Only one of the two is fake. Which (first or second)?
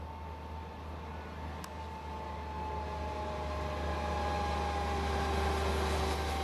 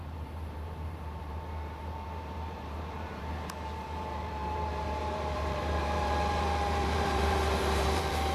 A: second